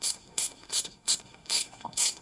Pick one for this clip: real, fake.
fake